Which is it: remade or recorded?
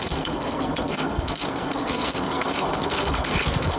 remade